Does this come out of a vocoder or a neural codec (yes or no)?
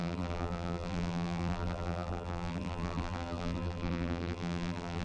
yes